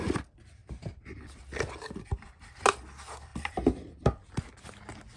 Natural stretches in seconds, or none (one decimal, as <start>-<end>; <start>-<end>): 0.0-0.6; 2.4-3.3; 4.4-5.2